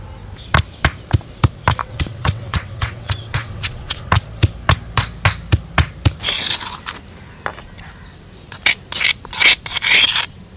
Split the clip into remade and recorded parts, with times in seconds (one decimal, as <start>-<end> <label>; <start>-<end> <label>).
0.0-1.8 recorded; 1.8-4.1 remade; 4.1-10.6 recorded